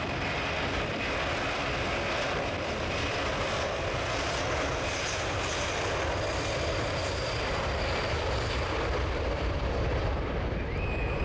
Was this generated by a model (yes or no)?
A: yes